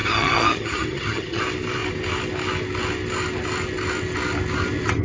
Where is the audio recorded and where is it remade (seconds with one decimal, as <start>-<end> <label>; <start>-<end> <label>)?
0.0-1.4 remade; 1.4-5.0 recorded